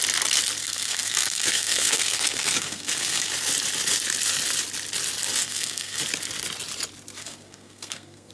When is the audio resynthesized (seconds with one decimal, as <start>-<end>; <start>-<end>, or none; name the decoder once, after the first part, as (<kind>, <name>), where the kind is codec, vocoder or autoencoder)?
0.6-3.3 (codec, SNAC); 5.4-6.0; 7.2-8.3